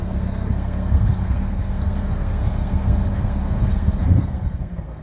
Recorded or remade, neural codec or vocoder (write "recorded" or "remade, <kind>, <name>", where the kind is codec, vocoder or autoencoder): remade, codec, SNAC